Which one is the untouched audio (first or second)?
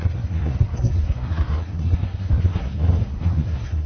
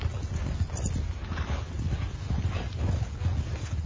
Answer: second